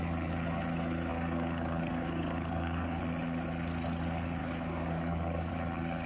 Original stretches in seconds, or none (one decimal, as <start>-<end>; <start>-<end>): 0.0-1.1; 3.0-4.4; 5.5-6.1